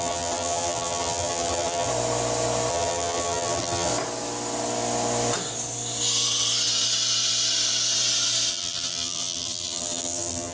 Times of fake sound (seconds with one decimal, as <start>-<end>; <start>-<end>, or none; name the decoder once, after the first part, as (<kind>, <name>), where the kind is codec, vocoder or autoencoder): 0.0-1.9 (vocoder, BigVGAN v2); 2.7-3.9; 8.5-10.5